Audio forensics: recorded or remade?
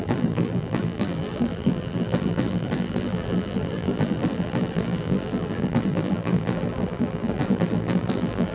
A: remade